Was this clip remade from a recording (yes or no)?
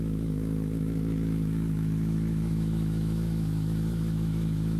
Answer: yes